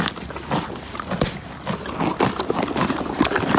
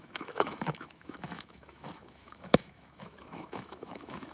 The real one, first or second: first